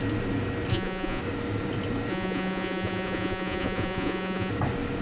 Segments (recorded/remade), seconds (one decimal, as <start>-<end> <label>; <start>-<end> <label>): 0.0-0.7 recorded; 0.7-1.2 remade; 1.2-2.1 recorded; 2.1-4.5 remade; 4.5-5.0 recorded